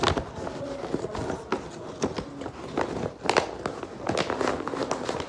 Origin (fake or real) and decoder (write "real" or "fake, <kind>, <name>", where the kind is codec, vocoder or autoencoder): real